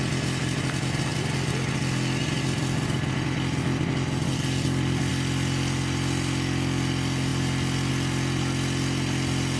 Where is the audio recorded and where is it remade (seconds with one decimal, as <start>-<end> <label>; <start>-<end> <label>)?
0.0-9.6 recorded